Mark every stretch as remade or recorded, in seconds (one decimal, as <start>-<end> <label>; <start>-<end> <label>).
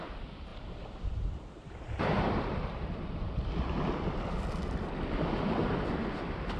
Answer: 0.0-0.5 recorded; 0.5-3.3 remade; 3.3-6.6 recorded